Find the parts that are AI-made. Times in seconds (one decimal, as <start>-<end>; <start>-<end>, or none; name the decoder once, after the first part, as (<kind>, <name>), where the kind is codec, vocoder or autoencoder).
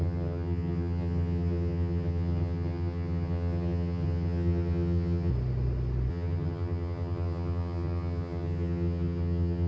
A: 0.0-5.3 (vocoder, HiFi-GAN); 6.1-9.7